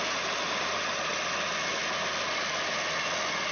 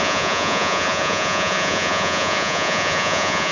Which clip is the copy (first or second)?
second